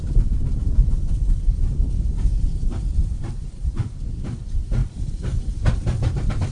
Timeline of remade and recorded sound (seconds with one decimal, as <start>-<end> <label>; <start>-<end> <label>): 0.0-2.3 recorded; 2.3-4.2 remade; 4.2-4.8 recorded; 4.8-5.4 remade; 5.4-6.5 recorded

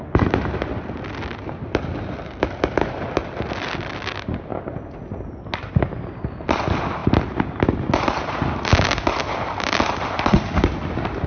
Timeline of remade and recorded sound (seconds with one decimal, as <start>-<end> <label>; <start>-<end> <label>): 0.0-11.3 recorded

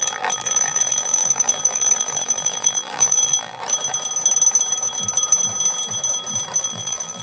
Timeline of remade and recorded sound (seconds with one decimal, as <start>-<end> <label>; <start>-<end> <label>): 0.0-3.6 remade; 3.6-6.6 recorded; 6.6-7.2 remade

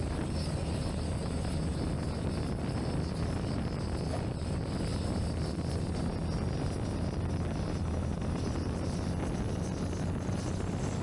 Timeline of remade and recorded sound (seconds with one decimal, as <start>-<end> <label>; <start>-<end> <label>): 0.0-4.9 recorded; 4.9-5.9 remade; 5.9-11.0 recorded